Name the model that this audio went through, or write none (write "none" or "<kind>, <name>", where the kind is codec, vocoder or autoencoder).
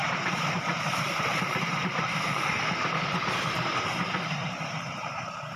vocoder, BigVGAN v2